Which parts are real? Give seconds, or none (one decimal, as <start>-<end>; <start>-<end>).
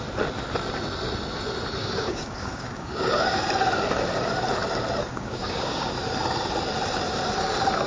0.0-1.8; 3.4-5.1; 5.9-7.9